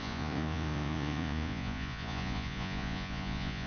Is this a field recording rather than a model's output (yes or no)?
no